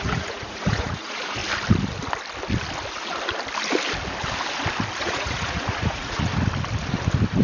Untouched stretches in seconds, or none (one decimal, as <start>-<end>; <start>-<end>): 1.4-5.0; 6.3-7.4